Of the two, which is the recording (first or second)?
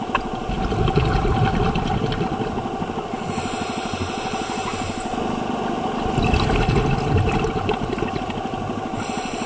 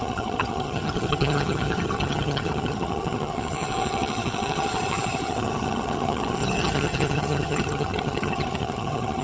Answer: first